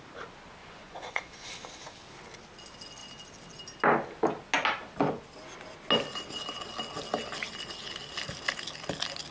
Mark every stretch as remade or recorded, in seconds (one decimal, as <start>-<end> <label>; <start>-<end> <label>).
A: 0.0-0.6 recorded; 0.6-1.5 remade; 1.5-9.3 recorded